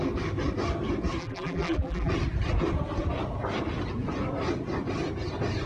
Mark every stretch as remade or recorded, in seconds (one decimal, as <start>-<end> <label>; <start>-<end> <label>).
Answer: 0.0-1.2 recorded; 1.2-2.1 remade; 2.1-5.7 recorded